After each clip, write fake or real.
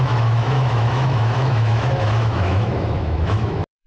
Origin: fake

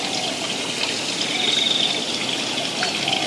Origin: real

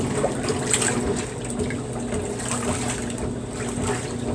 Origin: real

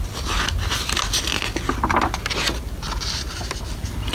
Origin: real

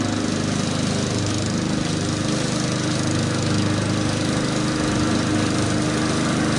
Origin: real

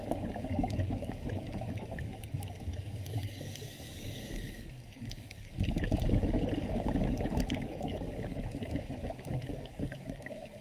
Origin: fake